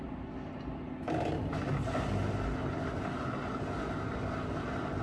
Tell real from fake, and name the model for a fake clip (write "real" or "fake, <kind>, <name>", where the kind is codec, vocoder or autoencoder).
real